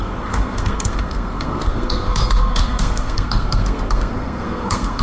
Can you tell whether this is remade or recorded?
remade